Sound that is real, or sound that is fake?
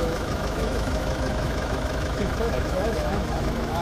fake